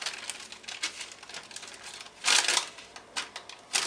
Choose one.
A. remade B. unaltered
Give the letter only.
B